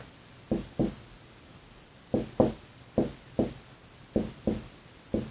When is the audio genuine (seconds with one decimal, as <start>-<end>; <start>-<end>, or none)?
0.0-5.3